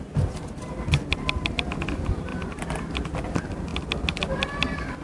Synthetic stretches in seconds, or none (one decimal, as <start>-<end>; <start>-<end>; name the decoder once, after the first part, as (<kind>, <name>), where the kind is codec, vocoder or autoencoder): none